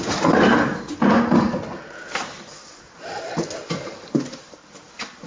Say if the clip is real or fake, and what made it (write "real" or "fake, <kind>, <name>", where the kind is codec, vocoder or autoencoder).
real